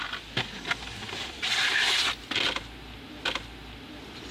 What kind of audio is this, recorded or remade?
recorded